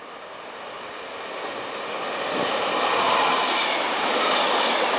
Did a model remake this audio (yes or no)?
no